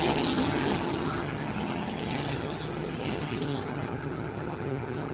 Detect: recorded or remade remade